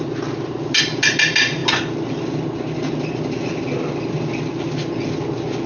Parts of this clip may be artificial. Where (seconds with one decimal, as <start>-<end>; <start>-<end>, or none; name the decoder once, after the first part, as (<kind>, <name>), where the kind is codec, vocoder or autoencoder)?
none